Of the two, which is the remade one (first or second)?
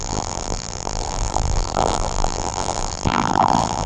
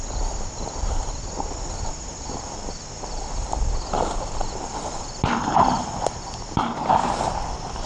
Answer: first